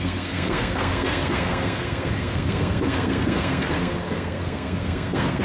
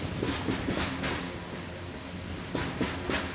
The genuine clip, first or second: second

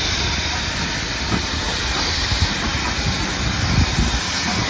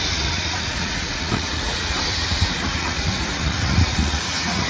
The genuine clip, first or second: first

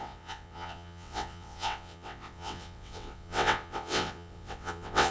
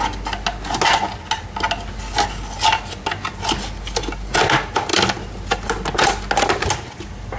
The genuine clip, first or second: second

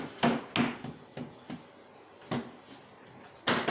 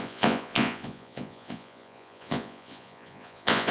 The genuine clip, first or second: first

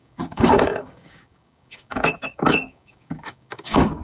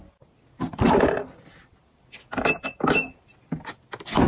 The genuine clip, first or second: second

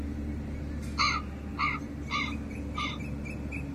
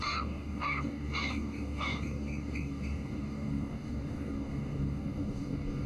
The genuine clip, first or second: first